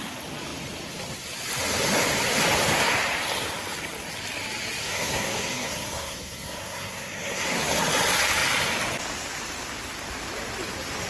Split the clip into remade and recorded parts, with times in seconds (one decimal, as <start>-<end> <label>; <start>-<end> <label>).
0.0-4.8 recorded; 4.8-7.6 remade; 7.6-11.1 recorded